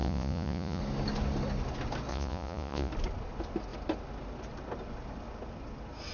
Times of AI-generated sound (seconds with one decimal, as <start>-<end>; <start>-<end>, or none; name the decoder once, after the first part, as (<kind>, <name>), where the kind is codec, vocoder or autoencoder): 0.0-0.8 (vocoder, Vocos); 2.1-2.9